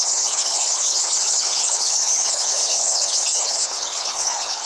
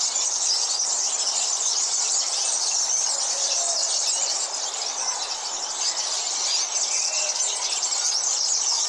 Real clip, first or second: second